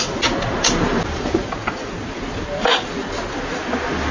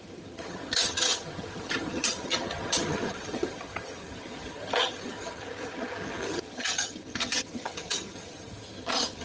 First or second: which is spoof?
second